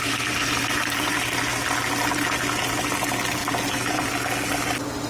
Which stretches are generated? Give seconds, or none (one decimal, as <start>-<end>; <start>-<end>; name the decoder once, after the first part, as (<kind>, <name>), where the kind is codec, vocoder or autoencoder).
none